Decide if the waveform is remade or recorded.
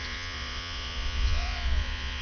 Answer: remade